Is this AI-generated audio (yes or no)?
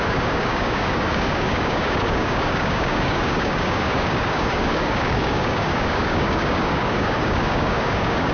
yes